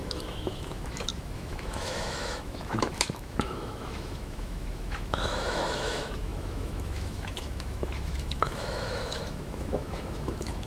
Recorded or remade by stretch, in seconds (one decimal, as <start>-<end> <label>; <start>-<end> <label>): 0.0-10.7 remade